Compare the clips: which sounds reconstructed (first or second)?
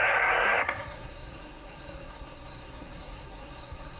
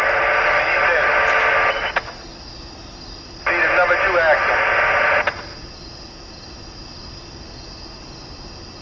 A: first